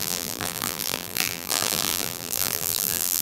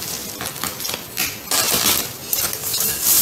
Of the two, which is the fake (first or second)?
first